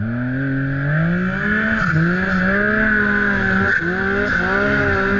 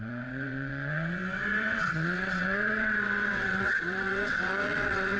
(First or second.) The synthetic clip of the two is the second